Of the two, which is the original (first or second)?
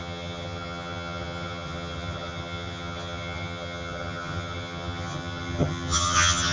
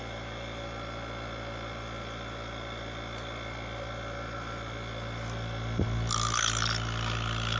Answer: second